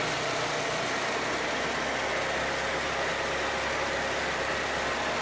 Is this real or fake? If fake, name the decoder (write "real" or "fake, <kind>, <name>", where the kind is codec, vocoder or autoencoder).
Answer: real